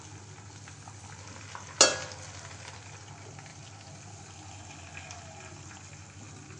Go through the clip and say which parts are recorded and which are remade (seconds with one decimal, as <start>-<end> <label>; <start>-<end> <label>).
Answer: 0.0-6.6 recorded